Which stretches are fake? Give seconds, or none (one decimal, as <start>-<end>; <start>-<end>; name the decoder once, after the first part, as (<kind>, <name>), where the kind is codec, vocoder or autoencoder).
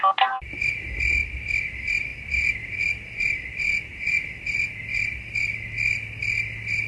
none